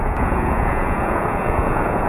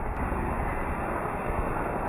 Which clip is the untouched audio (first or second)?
second